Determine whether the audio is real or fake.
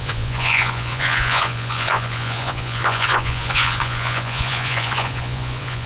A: fake